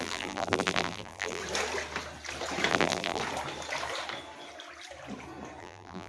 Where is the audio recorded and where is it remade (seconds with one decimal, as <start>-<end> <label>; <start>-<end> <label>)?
0.0-1.4 remade; 1.4-2.7 recorded; 2.7-3.2 remade; 3.2-5.6 recorded; 5.6-6.1 remade

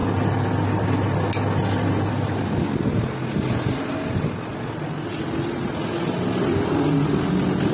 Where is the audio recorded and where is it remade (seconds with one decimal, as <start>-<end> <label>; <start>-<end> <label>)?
0.0-7.7 recorded

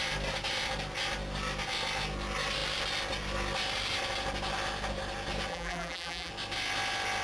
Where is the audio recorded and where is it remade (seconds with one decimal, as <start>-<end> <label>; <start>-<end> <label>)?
0.0-5.5 recorded; 5.5-6.3 remade; 6.3-7.2 recorded

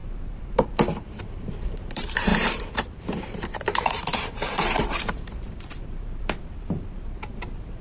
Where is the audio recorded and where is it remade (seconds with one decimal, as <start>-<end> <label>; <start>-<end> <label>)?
0.0-7.8 remade

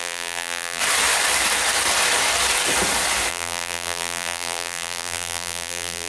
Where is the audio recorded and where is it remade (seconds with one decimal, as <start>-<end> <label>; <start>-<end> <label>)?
0.0-0.8 remade; 0.8-3.3 recorded; 3.3-6.1 remade

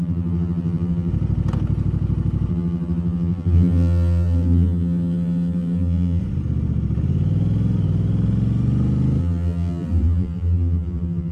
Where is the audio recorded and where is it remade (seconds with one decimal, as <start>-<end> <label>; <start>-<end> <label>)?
0.0-1.1 remade; 1.1-2.5 recorded; 2.5-6.2 remade; 6.2-9.2 recorded; 9.2-11.3 remade

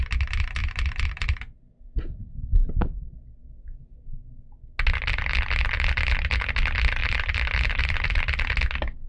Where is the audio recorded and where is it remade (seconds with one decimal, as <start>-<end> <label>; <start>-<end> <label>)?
0.0-0.6 recorded; 0.6-1.1 remade; 1.1-7.0 recorded; 7.0-8.4 remade; 8.4-9.1 recorded

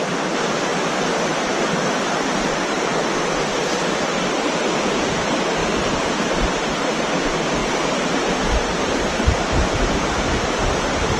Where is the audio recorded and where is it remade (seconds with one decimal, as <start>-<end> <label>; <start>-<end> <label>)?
0.0-5.6 recorded; 5.6-6.6 remade; 6.6-7.6 recorded; 7.6-11.2 remade